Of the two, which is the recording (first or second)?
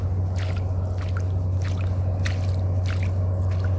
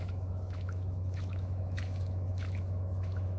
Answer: first